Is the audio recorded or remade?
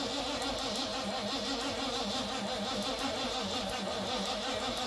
recorded